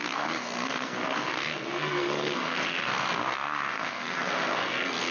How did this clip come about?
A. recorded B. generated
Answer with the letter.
B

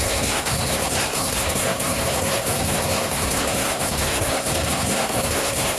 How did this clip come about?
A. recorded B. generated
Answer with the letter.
B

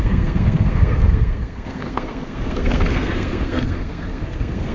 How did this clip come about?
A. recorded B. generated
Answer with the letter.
B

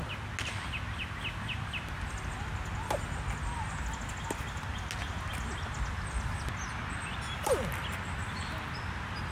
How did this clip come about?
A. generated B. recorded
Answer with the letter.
B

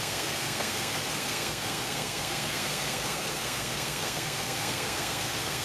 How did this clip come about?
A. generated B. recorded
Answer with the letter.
A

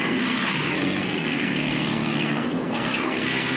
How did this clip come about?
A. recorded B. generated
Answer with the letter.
B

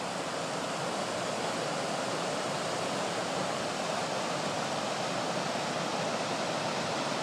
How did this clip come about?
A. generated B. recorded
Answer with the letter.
B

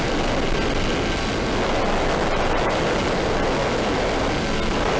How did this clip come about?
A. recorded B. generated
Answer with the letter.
A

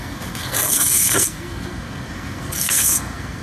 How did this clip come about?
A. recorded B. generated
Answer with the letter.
B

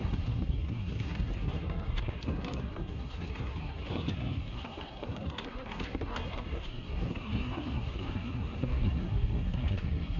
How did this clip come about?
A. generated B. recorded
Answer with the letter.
A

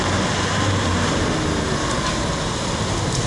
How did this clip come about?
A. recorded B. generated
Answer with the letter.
A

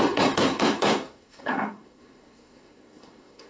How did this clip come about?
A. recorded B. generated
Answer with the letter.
B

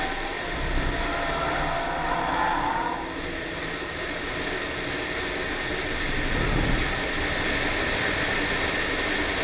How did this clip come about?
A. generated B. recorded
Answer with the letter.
B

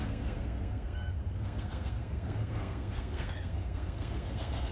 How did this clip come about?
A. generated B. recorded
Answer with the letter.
A